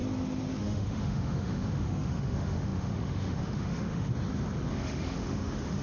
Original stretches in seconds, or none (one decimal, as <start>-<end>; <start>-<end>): 0.0-0.6; 4.1-4.7